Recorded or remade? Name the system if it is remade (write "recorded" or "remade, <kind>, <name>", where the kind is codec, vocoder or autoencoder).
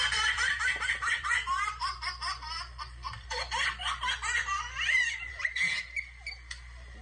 remade, vocoder, BigVGAN v2